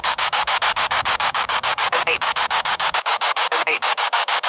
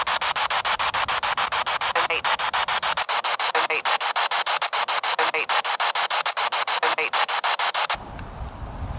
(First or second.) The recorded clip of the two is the second